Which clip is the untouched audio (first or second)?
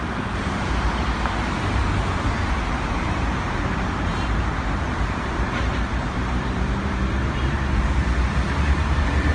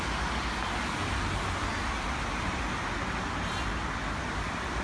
second